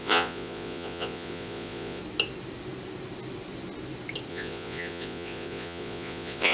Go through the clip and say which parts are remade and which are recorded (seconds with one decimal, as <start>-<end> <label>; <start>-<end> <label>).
0.0-2.0 remade; 2.0-4.3 recorded; 4.3-6.5 remade